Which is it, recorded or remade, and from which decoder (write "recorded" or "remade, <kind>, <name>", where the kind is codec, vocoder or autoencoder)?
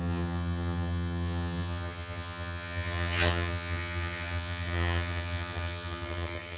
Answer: remade, vocoder, HiFi-GAN